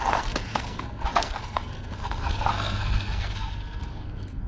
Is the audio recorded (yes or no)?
no